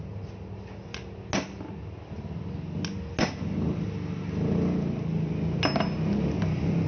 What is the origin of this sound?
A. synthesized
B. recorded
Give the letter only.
B